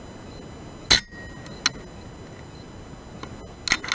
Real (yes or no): yes